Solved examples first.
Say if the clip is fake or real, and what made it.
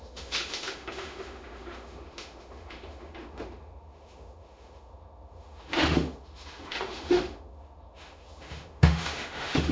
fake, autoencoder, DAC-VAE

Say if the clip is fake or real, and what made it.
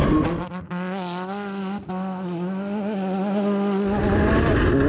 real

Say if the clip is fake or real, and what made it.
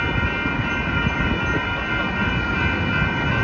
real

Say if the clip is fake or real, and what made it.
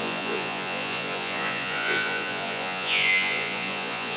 fake, vocoder, Vocos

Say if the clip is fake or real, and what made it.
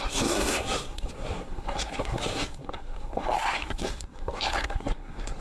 fake, codec, SNAC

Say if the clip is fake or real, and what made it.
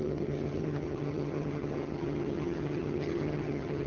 fake, vocoder, HiFi-GAN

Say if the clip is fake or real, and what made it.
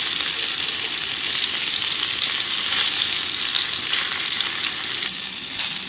real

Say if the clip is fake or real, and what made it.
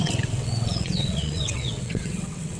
fake, vocoder, WaveNeXt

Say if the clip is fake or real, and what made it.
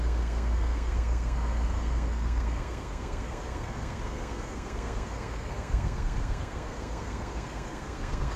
fake, codec, SNAC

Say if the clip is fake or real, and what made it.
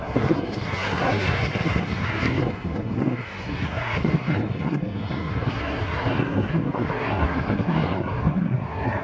fake, codec, SNAC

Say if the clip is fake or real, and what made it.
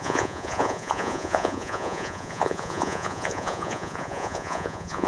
fake, vocoder, Vocos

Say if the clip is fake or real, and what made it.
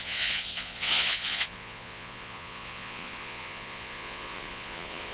fake, vocoder, Vocos